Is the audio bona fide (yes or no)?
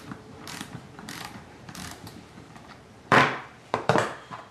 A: no